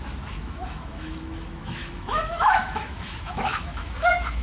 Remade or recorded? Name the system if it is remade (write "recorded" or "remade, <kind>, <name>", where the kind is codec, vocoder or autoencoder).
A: remade, autoencoder, DAC-VAE